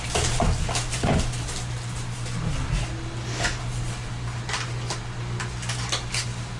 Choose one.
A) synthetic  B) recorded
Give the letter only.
B